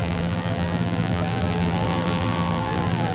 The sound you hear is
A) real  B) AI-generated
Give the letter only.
B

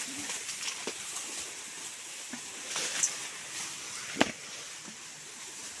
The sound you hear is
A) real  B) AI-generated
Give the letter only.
A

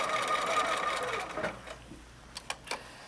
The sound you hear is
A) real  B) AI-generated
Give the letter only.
A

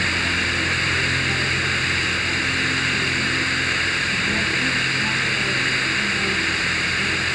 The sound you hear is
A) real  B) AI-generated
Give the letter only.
B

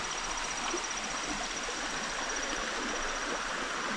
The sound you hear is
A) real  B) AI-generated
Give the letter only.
A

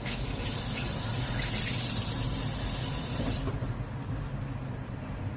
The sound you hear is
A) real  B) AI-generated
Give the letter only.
B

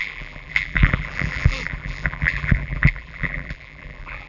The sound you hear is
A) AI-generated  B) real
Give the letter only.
A